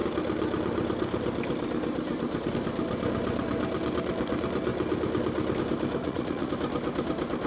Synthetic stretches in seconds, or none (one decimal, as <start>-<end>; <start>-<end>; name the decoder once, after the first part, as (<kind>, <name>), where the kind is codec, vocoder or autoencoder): 6.0-6.5 (vocoder, Vocos)